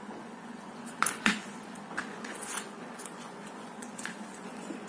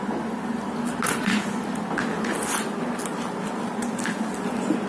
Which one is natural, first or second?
second